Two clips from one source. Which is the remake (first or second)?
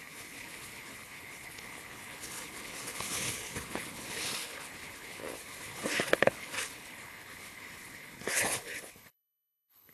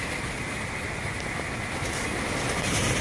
first